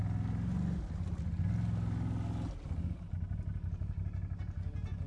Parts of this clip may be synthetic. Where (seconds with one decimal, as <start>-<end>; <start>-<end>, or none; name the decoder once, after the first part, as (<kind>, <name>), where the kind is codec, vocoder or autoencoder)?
none